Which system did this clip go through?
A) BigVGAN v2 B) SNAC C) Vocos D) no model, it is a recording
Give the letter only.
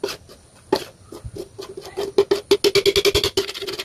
D